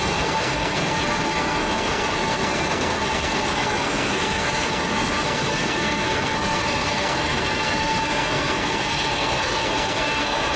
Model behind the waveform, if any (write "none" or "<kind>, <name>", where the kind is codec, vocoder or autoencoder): codec, SNAC